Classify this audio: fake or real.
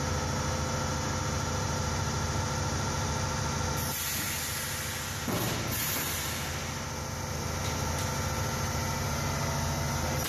real